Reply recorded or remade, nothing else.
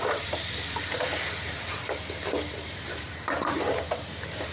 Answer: remade